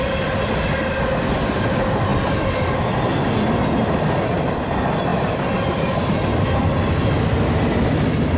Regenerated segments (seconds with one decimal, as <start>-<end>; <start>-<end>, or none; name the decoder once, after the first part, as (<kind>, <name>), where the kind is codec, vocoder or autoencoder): none